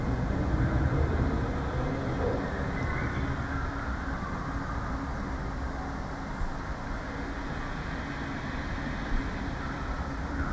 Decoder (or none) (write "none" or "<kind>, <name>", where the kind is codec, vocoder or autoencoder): none